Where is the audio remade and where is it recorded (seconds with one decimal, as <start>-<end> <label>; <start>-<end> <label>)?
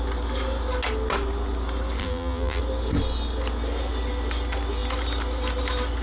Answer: 0.0-2.0 recorded; 2.0-2.6 remade; 2.6-6.0 recorded